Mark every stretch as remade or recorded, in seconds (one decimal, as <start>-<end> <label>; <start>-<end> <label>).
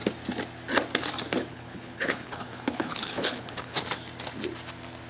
0.0-1.5 recorded; 1.5-3.8 remade; 3.8-5.1 recorded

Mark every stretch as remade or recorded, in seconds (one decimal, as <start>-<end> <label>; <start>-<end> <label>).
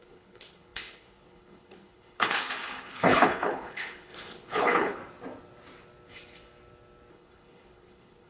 0.0-5.0 remade; 5.0-7.1 recorded; 7.1-8.3 remade